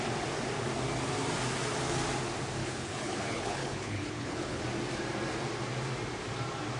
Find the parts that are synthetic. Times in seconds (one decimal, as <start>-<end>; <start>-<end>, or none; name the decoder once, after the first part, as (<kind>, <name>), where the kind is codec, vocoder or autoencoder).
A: 2.6-4.6 (codec, HILCodec)